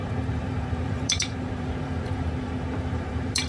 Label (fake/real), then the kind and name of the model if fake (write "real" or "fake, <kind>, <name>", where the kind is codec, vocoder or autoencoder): fake, vocoder, BigVGAN v2